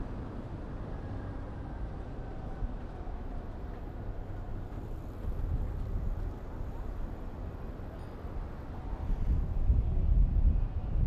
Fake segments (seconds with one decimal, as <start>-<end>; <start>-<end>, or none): none